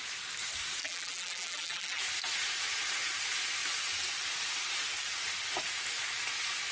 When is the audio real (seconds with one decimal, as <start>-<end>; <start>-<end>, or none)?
0.0-0.8; 2.0-6.7